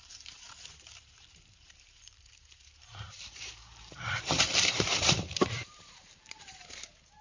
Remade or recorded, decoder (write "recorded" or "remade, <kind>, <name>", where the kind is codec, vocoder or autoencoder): remade, vocoder, BigVGAN v2